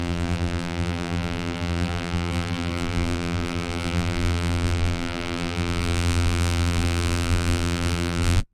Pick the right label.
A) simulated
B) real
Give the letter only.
A